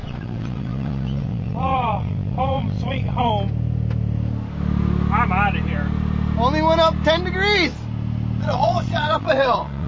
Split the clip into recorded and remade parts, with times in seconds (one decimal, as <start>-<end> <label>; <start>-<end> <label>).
0.0-3.3 remade; 3.3-8.4 recorded; 8.4-9.9 remade